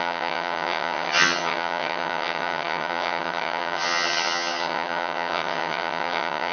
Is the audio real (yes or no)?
no